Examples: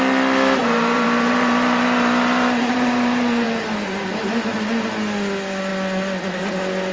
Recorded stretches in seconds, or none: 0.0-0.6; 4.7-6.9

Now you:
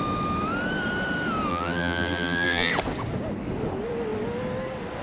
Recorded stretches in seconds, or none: 0.0-1.5; 2.7-5.0

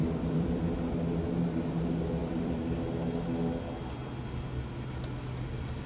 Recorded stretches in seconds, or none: 0.6-2.2; 2.9-5.9

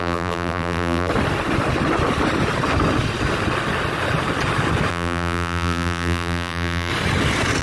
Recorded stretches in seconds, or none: 1.1-4.9; 6.9-7.6

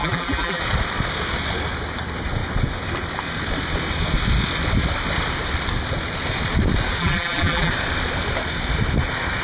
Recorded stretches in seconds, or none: 0.6-7.0; 7.7-9.4

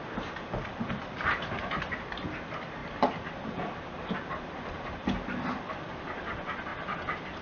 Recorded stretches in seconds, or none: 0.0-2.8; 5.7-7.4

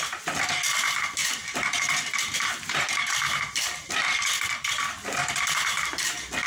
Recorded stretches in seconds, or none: 0.0-1.2; 3.2-5.2; 6.1-6.5

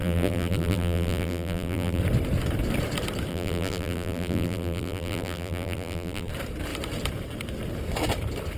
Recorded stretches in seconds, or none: 2.0-3.3; 6.3-8.6